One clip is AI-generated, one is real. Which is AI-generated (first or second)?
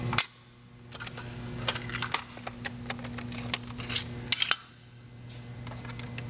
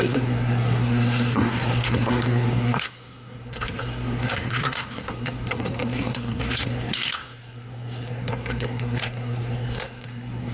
second